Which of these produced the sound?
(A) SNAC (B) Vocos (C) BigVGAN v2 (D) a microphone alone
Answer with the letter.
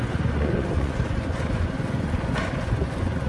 B